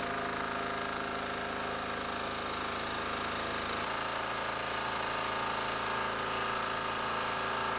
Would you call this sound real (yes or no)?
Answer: yes